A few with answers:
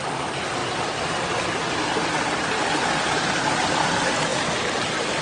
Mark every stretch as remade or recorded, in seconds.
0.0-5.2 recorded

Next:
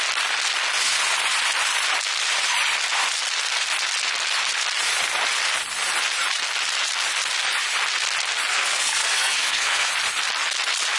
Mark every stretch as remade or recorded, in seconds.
0.0-8.5 recorded; 8.5-9.9 remade; 9.9-11.0 recorded

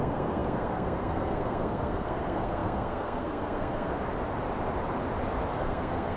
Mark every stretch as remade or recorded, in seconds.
0.0-3.9 remade; 3.9-5.5 recorded; 5.5-6.2 remade

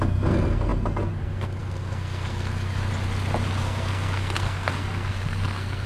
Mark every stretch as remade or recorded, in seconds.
0.0-2.9 remade; 2.9-3.6 recorded; 3.6-5.9 remade

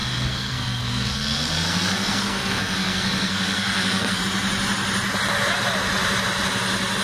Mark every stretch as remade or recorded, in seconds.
0.0-4.2 remade; 4.2-7.0 recorded